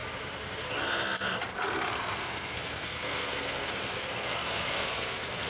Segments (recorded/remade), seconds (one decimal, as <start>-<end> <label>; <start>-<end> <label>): 0.0-1.9 recorded; 1.9-5.5 remade